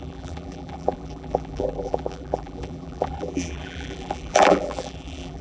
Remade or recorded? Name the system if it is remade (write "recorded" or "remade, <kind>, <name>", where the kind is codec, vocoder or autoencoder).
remade, vocoder, BigVGAN v2